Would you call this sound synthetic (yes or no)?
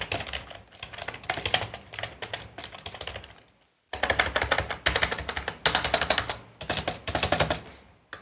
no